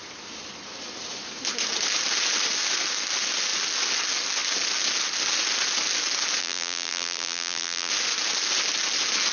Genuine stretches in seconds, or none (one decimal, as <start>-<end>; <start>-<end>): 0.0-6.4; 7.9-9.3